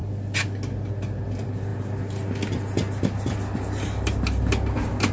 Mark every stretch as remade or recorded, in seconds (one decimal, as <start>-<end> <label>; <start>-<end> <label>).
0.0-5.1 recorded